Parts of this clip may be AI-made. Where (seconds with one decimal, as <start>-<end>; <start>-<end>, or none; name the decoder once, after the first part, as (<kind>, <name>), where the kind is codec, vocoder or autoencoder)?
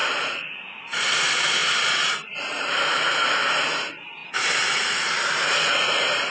0.0-6.3 (vocoder, BigVGAN v2)